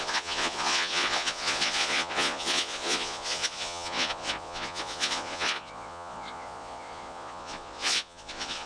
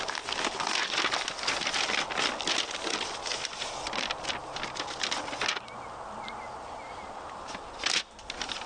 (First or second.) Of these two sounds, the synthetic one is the first